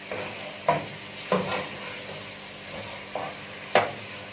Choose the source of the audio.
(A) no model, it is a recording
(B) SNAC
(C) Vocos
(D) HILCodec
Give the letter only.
A